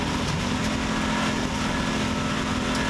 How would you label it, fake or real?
real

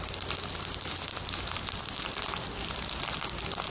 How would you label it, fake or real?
real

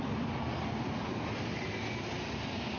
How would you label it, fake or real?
real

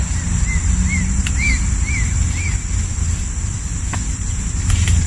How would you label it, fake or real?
fake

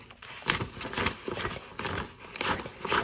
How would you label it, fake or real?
real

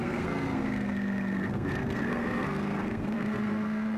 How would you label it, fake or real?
fake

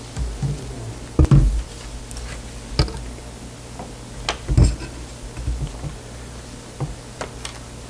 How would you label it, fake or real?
real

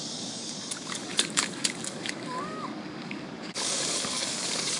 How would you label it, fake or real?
fake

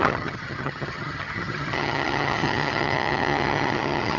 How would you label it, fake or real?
fake